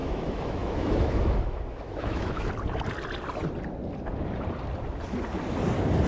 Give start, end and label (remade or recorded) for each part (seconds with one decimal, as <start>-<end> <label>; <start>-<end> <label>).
0.0-2.5 remade; 2.5-6.1 recorded